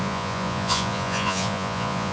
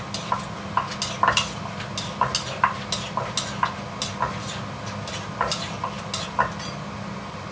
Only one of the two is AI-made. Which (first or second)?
first